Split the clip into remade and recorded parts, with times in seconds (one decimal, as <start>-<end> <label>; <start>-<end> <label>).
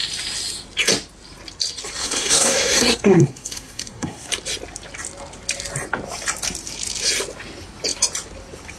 0.0-2.0 recorded; 2.0-4.3 remade; 4.3-8.8 recorded